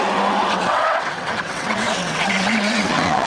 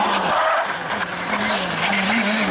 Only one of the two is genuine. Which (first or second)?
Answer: second